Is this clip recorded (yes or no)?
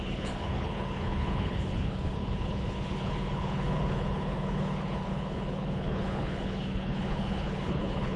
no